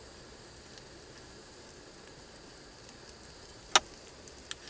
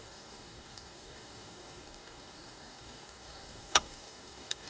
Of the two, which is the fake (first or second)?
second